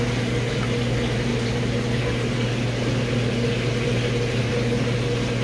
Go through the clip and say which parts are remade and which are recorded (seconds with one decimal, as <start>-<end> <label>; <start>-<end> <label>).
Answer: 0.0-5.4 recorded